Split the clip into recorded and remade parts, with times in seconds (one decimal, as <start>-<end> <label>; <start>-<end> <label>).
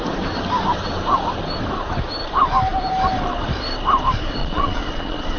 0.0-4.4 recorded; 4.4-5.4 remade